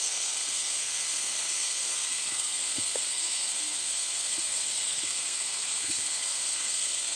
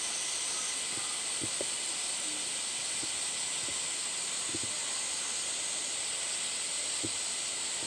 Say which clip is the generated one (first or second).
first